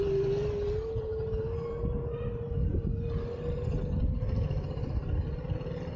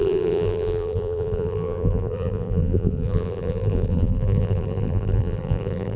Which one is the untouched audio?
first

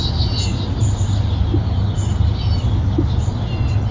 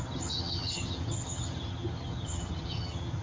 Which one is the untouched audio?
first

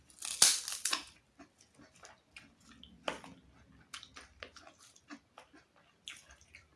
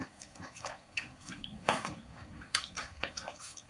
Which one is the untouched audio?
first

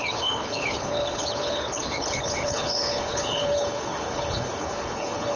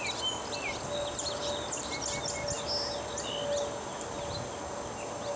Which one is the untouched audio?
second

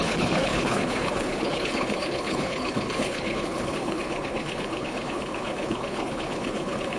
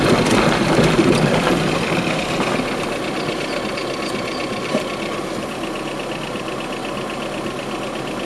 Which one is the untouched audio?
second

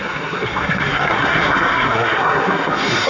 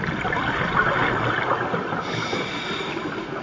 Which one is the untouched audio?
second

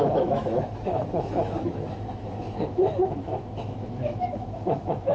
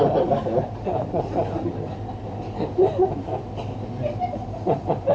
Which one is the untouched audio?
second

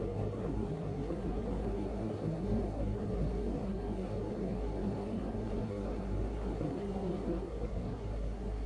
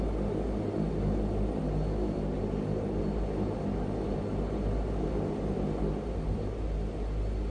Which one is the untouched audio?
second